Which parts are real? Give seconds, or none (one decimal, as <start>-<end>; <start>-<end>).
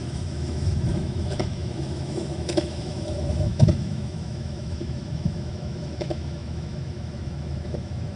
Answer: none